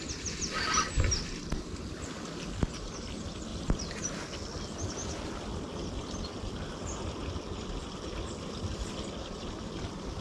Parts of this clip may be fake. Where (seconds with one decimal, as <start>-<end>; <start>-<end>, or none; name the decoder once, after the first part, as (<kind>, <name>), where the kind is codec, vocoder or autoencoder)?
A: 3.5-4.3 (vocoder, BigVGAN v2)